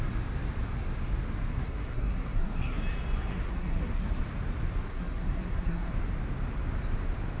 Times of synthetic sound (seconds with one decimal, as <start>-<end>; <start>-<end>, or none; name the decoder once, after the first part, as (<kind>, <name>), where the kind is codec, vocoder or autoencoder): 1.5-2.8 (codec, SNAC); 3.3-4.2; 4.9-5.9